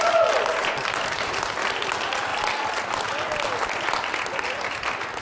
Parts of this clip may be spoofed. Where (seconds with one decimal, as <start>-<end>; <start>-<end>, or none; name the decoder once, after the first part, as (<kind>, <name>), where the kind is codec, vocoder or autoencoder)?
0.5-1.3 (vocoder, BigVGAN v2)